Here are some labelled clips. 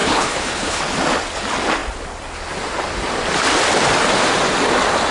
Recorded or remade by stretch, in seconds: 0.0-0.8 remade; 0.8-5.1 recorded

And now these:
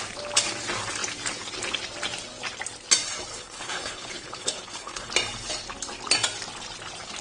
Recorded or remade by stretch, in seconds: 0.0-3.3 recorded; 3.3-5.1 remade; 5.1-7.2 recorded

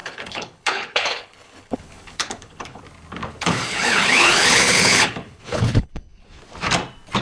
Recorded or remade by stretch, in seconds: 0.0-2.8 remade; 2.8-3.2 recorded; 3.2-6.4 remade; 6.4-7.2 recorded

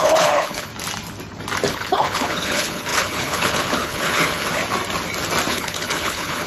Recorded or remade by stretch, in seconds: 0.0-0.7 remade; 0.7-1.7 recorded; 1.7-4.6 remade; 4.6-5.5 recorded; 5.5-6.5 remade

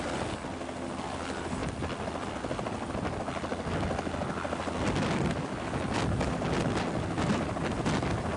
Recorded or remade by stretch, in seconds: 0.0-8.4 recorded

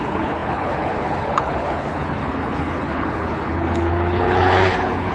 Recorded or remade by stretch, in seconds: 0.0-5.1 remade

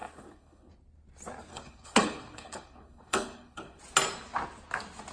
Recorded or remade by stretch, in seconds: 0.0-0.7 remade; 0.7-1.5 recorded; 1.5-3.8 remade; 3.8-5.1 recorded